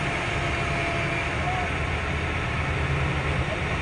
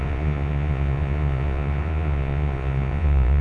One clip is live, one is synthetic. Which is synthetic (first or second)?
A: second